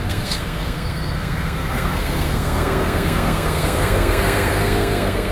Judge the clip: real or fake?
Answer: fake